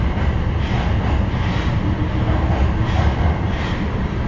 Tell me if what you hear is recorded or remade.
recorded